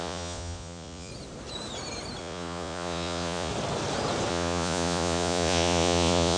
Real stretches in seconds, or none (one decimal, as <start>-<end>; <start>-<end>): 1.1-2.2; 3.5-4.3